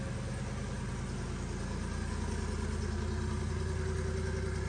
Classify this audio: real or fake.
real